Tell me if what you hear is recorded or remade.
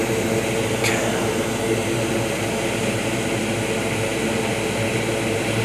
recorded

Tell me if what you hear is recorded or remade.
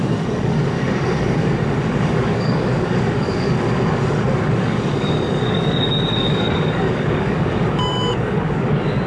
remade